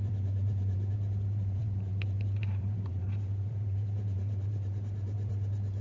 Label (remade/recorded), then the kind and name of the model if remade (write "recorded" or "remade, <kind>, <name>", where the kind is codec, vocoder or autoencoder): remade, vocoder, BigVGAN v2